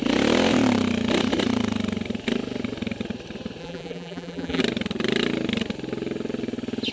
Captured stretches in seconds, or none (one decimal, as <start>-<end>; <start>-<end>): 0.0-3.6; 4.6-6.9